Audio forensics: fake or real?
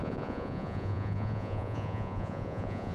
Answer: fake